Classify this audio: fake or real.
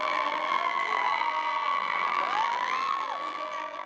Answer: fake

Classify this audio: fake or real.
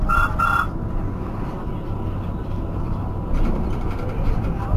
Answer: real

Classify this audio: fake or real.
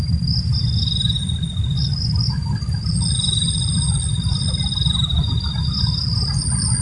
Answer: real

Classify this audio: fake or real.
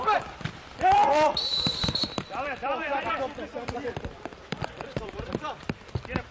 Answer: fake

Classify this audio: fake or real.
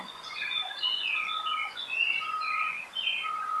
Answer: fake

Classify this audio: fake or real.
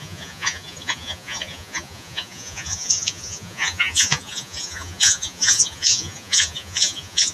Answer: fake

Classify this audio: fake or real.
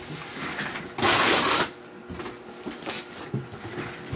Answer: real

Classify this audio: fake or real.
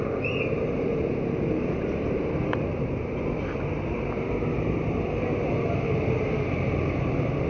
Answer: real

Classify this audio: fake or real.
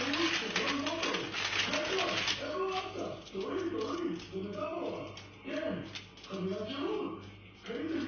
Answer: real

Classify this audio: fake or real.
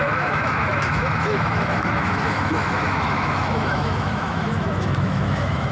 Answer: fake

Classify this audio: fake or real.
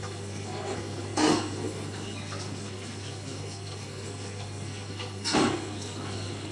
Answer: fake